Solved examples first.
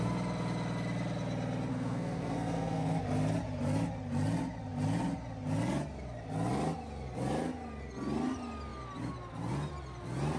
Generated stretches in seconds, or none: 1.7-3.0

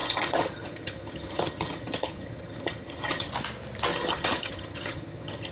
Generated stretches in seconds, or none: 0.0-3.3; 3.9-5.5

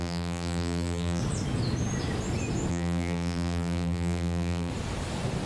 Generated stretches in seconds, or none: 0.0-1.2; 2.7-4.7